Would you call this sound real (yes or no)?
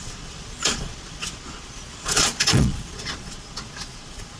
no